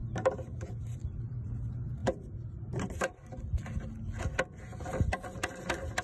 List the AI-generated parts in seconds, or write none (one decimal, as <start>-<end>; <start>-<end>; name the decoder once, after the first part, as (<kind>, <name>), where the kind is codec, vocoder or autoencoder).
0.0-0.7 (vocoder, BigVGAN v2); 2.0-2.6